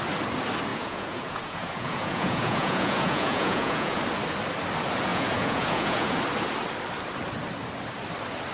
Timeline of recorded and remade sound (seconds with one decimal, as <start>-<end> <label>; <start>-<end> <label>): 0.0-0.7 recorded; 0.7-4.0 remade; 4.0-5.1 recorded; 5.1-6.2 remade; 6.2-8.5 recorded